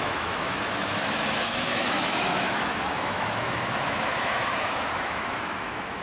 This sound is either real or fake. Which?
fake